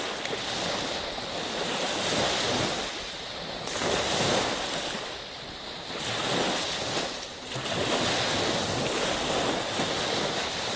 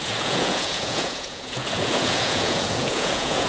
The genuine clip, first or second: first